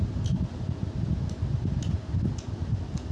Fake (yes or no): no